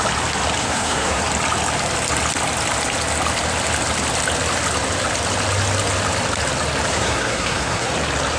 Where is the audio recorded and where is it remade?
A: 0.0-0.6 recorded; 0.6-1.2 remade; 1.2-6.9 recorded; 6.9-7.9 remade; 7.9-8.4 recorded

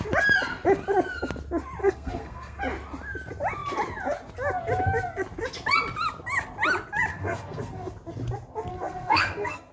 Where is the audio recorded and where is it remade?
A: 0.0-1.8 recorded; 1.8-2.6 remade; 2.6-7.1 recorded; 7.1-7.9 remade; 7.9-8.7 recorded; 8.7-9.7 remade